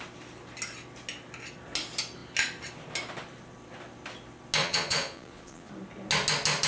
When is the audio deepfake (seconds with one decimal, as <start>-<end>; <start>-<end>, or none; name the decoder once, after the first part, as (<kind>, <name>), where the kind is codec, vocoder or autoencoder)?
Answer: 4.6-5.7 (vocoder, Vocos)